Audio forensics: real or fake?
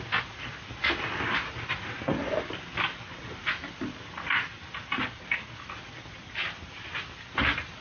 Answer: real